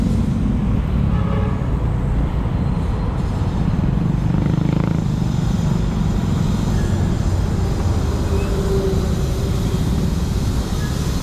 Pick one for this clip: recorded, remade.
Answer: recorded